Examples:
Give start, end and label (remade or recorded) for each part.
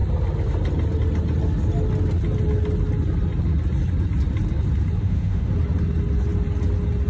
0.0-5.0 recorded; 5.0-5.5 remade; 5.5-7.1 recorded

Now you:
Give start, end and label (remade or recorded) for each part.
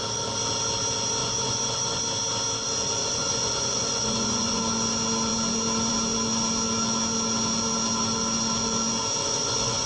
0.0-1.2 recorded; 1.2-2.0 remade; 2.0-3.0 recorded; 3.0-4.6 remade; 4.6-9.2 recorded; 9.2-9.9 remade